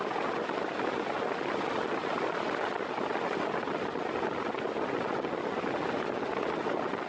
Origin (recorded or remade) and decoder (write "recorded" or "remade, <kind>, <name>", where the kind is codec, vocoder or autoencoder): recorded